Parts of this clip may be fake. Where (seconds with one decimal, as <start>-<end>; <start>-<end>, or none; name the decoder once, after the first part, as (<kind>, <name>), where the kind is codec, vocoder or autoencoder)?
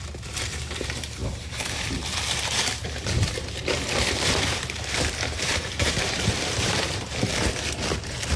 0.0-7.3 (vocoder, BigVGAN v2)